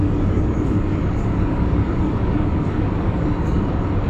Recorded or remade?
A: remade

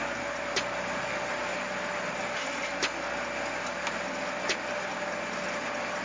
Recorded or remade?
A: recorded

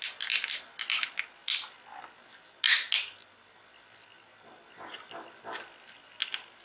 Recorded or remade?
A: recorded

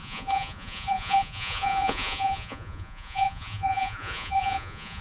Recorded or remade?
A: remade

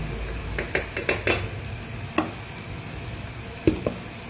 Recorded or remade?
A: recorded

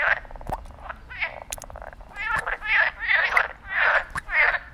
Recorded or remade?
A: recorded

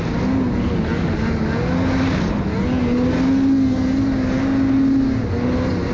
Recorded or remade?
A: recorded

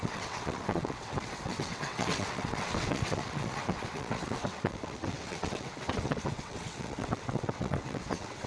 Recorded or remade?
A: remade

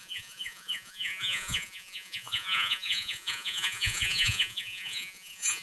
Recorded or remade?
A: remade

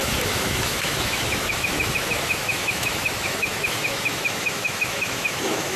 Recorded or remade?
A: remade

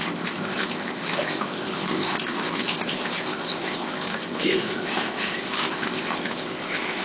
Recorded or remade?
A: remade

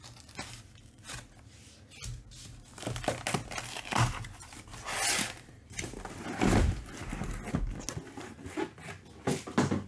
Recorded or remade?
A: recorded